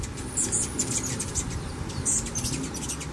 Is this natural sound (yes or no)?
yes